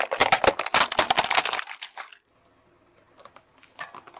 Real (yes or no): yes